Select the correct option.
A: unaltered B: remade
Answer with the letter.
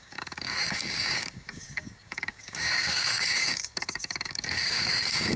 B